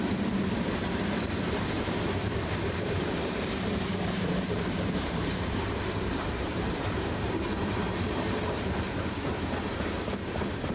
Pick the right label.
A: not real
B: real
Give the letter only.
A